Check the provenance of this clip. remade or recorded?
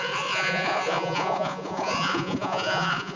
remade